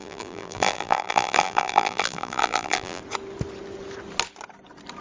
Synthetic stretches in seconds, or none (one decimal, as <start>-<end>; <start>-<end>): 0.0-3.0